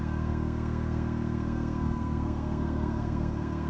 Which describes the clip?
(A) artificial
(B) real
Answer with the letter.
A